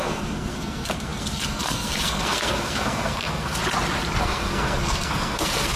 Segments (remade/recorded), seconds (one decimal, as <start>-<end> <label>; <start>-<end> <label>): 0.0-3.6 remade; 3.6-4.2 recorded; 4.2-5.8 remade